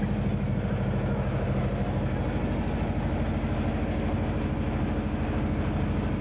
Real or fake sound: real